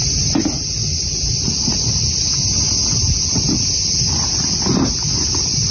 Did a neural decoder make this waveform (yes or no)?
no